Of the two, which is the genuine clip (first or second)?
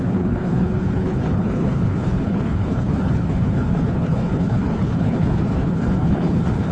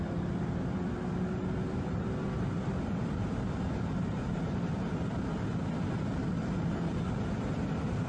second